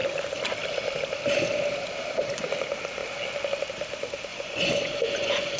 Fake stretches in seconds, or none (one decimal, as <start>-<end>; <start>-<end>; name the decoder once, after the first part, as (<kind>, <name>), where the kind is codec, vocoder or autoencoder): 4.3-5.6 (vocoder, Vocos)